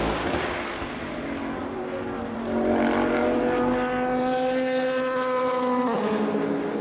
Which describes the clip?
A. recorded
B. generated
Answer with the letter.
A